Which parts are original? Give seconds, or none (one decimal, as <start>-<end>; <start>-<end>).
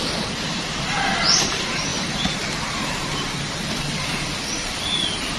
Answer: none